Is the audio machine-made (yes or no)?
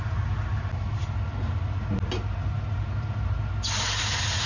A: no